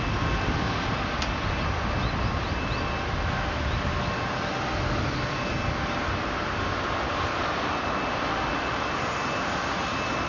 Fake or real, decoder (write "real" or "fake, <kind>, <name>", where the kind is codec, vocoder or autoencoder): real